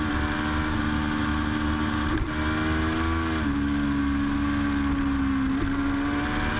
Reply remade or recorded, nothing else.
recorded